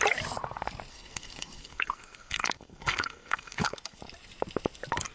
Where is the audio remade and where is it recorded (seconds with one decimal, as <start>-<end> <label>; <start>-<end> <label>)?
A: 0.0-0.9 recorded; 0.9-4.0 remade; 4.0-5.1 recorded